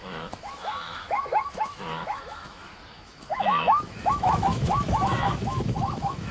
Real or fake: fake